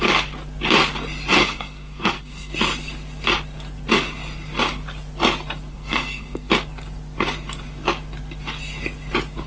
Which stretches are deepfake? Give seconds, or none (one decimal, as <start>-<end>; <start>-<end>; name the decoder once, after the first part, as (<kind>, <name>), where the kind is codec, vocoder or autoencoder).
1.4-2.5 (codec, SNAC); 5.7-6.5